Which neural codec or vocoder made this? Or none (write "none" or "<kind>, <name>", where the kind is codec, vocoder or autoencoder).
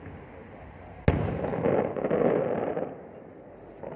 none